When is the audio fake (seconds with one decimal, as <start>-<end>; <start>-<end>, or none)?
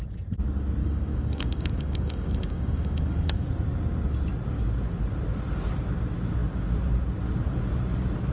0.8-3.5